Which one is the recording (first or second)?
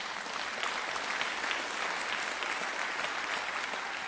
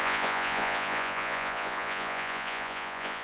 first